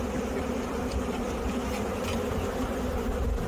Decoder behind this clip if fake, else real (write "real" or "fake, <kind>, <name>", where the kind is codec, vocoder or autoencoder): real